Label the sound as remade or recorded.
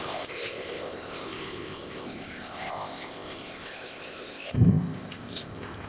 remade